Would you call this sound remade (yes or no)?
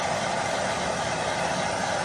no